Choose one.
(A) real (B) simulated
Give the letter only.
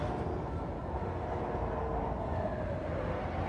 A